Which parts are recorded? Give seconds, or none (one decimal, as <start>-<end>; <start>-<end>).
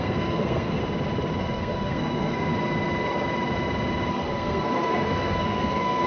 0.8-1.4; 2.5-4.1